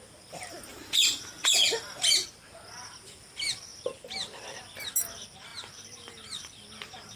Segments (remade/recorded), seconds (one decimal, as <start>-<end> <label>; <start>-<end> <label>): 0.0-0.7 recorded; 0.7-1.2 remade; 1.2-5.5 recorded; 5.5-6.5 remade; 6.5-7.2 recorded